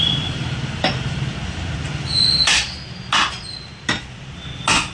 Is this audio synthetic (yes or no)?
no